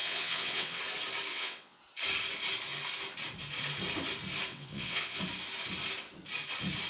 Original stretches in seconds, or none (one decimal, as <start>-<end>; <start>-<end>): 0.8-1.3; 1.8-4.5; 5.2-6.9